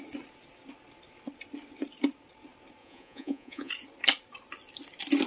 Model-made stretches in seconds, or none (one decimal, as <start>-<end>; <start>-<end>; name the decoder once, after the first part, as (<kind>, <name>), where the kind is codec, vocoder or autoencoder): 2.8-3.7 (vocoder, Vocos)